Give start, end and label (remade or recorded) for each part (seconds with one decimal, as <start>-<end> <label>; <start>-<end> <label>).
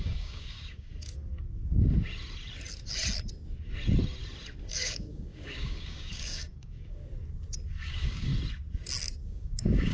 0.0-0.9 remade; 0.9-4.7 recorded; 4.7-7.0 remade; 7.0-7.7 recorded; 7.7-8.3 remade; 8.3-9.1 recorded; 9.1-9.9 remade